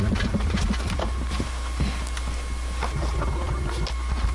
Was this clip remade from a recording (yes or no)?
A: no